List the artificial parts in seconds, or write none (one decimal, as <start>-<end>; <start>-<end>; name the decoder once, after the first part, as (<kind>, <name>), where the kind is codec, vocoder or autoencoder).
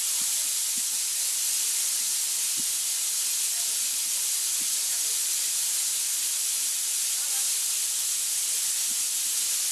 none